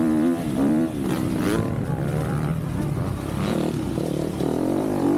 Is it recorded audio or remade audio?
remade